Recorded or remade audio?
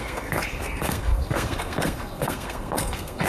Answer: remade